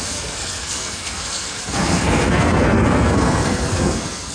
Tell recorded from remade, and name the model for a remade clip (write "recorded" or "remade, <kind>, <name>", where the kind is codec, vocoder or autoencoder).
remade, codec, SNAC